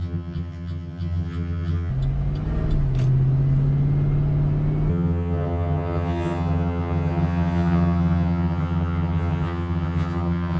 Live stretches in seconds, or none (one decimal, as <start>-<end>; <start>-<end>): 1.9-4.9

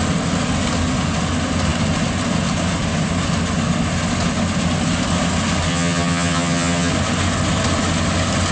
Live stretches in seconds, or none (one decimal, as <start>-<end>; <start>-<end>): 0.0-5.7; 6.9-8.5

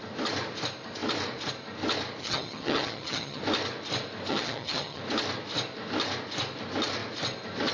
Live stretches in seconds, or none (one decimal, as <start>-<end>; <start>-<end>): 0.0-2.2; 3.4-4.3; 5.0-7.7